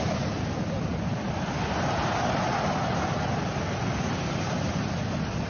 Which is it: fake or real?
real